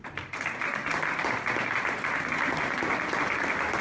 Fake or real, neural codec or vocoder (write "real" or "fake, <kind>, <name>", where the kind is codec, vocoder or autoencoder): real